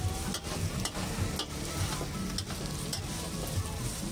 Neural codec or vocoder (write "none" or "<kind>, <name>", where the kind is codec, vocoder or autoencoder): none